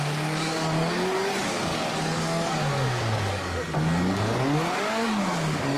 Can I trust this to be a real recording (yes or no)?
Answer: no